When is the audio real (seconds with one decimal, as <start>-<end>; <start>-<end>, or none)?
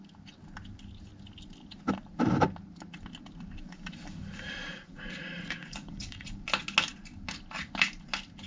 0.0-4.7; 6.3-8.5